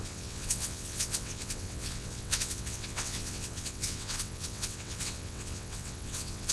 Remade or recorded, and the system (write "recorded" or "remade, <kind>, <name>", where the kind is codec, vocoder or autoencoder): remade, vocoder, WaveNeXt